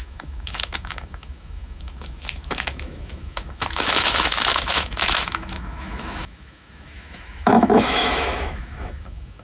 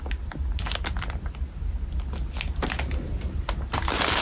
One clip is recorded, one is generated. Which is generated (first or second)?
first